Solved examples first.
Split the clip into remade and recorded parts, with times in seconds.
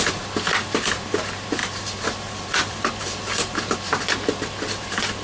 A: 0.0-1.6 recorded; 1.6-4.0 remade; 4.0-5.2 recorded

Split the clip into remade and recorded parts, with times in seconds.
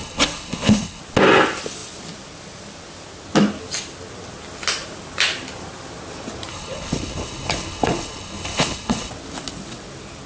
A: 0.0-1.0 remade; 1.0-6.5 recorded; 6.5-9.1 remade; 9.1-10.3 recorded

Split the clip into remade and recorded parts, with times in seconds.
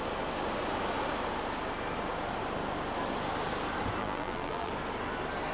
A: 0.0-4.0 recorded; 4.0-4.7 remade; 4.7-5.5 recorded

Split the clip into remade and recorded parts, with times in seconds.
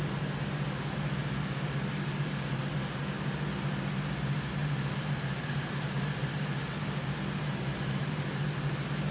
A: 0.0-9.1 recorded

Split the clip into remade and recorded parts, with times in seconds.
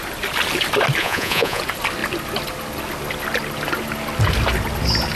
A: 0.0-1.0 recorded; 1.0-1.6 remade; 1.6-5.2 recorded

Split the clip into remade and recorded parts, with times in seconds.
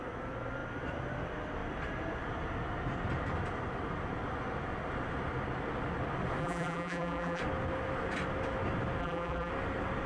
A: 0.0-6.4 recorded; 6.4-7.4 remade; 7.4-9.0 recorded; 9.0-9.5 remade; 9.5-10.1 recorded